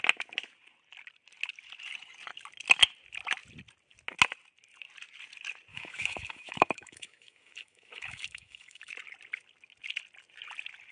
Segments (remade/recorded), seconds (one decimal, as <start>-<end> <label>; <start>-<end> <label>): 0.0-5.7 recorded; 5.7-8.9 remade; 8.9-10.9 recorded